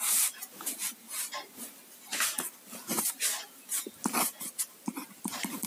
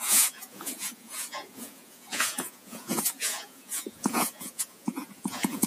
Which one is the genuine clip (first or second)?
first